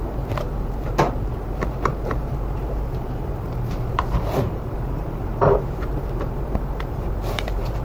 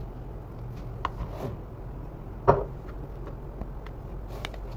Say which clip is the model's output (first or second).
first